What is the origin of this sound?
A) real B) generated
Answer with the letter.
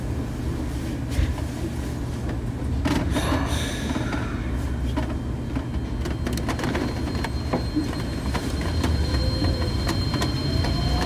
A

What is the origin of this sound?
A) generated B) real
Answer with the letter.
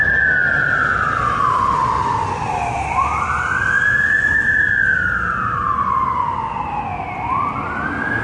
B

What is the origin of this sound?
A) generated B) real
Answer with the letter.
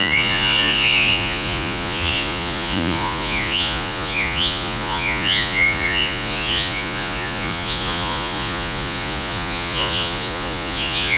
A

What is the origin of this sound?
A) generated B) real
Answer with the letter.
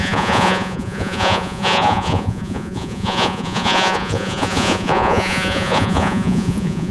A